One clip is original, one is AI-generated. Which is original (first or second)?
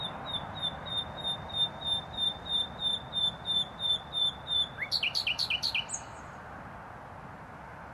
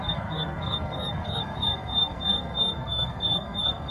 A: first